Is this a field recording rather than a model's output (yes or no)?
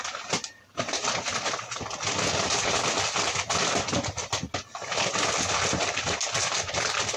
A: yes